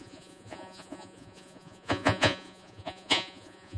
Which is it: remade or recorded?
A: remade